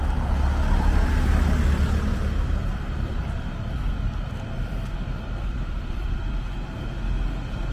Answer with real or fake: real